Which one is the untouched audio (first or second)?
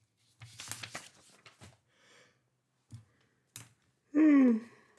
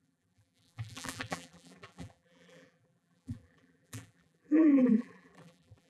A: first